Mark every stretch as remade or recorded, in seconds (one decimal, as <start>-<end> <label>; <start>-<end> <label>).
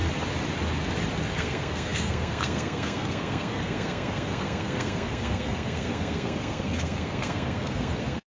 0.0-1.3 recorded; 1.3-8.4 remade